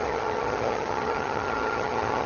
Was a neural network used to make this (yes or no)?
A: yes